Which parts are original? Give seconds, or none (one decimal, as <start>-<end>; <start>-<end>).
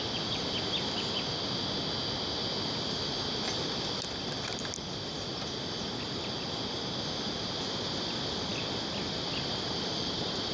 0.0-10.5